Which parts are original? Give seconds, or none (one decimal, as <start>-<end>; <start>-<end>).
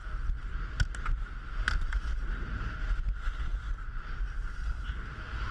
0.0-5.5